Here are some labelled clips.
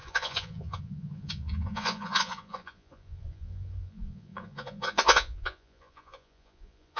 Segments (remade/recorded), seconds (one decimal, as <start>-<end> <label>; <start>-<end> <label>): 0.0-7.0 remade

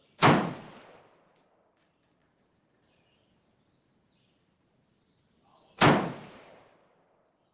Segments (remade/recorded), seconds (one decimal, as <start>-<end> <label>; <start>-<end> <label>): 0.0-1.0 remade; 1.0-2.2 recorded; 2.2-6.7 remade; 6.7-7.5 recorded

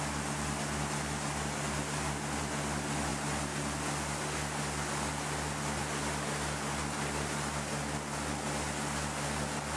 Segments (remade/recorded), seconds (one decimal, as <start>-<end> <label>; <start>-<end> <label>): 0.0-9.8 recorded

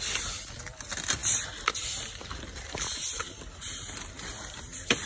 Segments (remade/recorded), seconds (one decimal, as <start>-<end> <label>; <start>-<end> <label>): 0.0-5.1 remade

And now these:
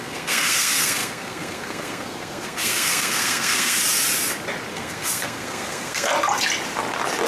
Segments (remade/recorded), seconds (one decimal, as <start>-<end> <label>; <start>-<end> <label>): 0.0-3.8 remade; 3.8-4.7 recorded; 4.7-6.1 remade; 6.1-7.3 recorded

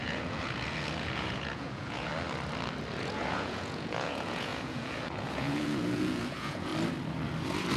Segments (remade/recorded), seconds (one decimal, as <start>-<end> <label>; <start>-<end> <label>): 0.0-2.1 remade; 2.1-3.0 recorded; 3.0-6.7 remade; 6.7-7.8 recorded

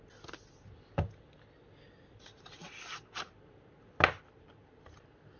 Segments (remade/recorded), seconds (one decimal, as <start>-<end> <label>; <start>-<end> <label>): 0.0-5.4 recorded

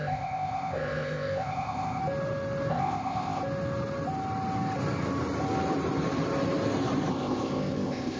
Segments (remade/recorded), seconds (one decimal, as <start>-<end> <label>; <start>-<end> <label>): 0.0-2.0 remade; 2.0-2.7 recorded; 2.7-3.4 remade; 3.4-7.1 recorded; 7.1-8.2 remade